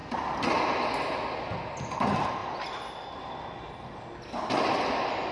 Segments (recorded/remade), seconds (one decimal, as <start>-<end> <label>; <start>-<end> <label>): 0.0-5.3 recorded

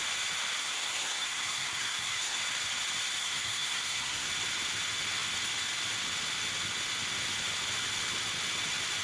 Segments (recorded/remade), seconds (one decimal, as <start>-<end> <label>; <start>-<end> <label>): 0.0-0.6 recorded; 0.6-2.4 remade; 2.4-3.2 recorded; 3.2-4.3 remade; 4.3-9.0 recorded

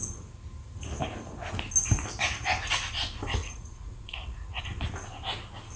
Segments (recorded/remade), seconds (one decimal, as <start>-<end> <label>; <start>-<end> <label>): 0.0-3.4 recorded; 3.4-4.6 remade; 4.6-5.8 recorded

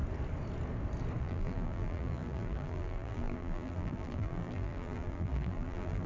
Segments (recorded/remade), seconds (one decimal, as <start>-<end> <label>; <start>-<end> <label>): 0.0-1.2 recorded; 1.2-6.1 remade

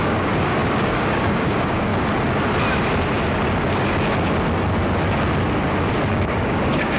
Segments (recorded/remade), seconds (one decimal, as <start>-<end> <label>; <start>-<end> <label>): 0.0-1.9 remade; 1.9-6.1 recorded; 6.1-7.0 remade

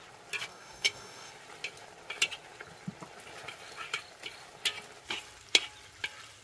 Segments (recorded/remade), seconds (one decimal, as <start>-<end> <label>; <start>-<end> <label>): 0.0-0.5 recorded; 0.5-1.3 remade; 1.3-6.4 recorded

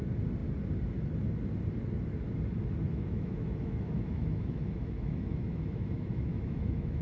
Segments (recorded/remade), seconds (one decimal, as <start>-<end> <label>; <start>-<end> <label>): 0.0-2.9 recorded; 2.9-7.0 remade

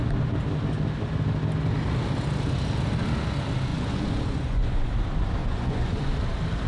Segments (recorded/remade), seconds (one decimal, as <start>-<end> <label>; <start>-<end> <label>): 0.0-3.7 recorded; 3.7-4.9 remade; 4.9-5.4 recorded; 5.4-6.1 remade; 6.1-6.7 recorded